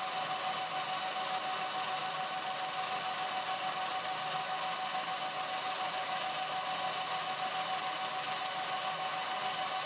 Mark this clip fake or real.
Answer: real